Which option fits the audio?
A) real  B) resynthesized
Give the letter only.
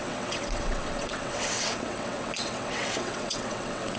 B